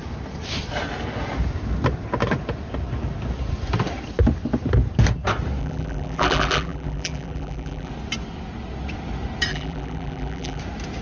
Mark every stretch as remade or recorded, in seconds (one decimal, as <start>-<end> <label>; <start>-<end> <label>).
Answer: 0.0-5.6 recorded; 5.6-7.9 remade; 7.9-9.5 recorded; 9.5-10.6 remade; 10.6-11.0 recorded